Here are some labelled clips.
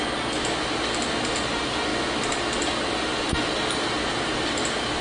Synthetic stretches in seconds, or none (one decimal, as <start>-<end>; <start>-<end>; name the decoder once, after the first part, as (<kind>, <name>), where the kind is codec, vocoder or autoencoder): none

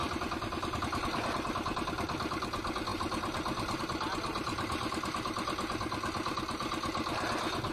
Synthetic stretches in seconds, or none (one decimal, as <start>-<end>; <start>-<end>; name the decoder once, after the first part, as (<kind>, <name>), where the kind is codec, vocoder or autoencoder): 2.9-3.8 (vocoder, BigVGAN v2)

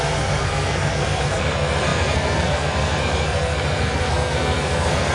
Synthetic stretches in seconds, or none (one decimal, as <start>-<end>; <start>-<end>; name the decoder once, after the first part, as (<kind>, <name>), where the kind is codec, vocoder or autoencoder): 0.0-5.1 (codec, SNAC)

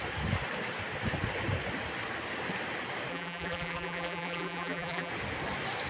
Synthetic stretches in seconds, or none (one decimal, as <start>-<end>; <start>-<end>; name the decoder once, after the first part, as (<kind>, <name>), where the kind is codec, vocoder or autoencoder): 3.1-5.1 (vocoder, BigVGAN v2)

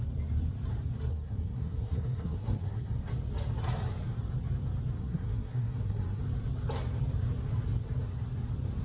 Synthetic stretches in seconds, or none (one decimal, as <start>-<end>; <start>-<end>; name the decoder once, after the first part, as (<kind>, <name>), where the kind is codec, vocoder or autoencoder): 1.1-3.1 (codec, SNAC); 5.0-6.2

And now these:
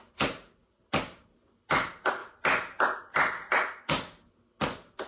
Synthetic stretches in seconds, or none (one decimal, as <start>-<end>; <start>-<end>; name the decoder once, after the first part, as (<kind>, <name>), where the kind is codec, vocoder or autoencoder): none

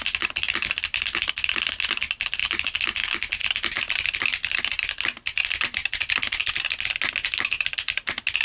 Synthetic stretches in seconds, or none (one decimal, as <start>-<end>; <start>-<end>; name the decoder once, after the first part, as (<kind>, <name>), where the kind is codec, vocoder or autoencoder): none

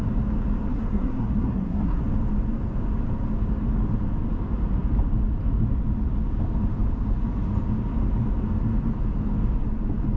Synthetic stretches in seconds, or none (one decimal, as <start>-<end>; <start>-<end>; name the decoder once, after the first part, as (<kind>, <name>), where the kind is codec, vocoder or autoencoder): 0.7-2.0 (codec, SNAC)